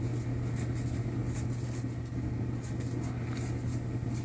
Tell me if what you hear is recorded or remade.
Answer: recorded